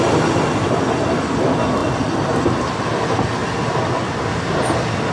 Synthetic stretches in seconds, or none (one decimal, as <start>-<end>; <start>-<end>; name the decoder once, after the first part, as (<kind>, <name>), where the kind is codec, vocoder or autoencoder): none